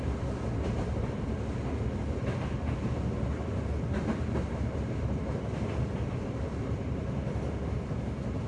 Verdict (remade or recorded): recorded